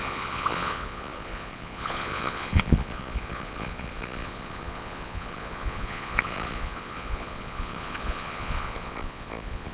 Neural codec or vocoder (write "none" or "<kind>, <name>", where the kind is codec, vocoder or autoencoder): vocoder, Vocos